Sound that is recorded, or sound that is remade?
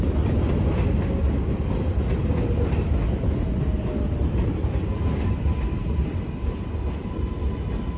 recorded